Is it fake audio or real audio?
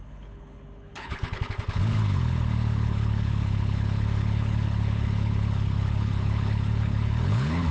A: fake